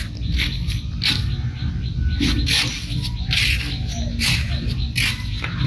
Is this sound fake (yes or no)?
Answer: no